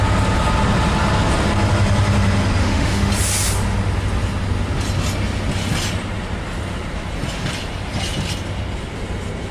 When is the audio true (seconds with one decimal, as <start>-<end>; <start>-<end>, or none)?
0.0-2.6; 3.1-9.5